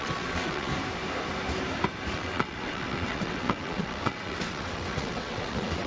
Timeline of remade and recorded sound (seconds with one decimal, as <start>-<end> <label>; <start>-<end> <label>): 0.0-0.7 remade; 0.7-2.1 recorded; 2.1-5.9 remade